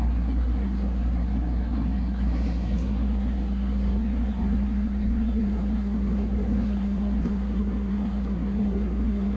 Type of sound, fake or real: fake